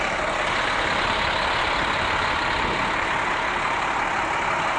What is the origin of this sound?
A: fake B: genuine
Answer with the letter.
B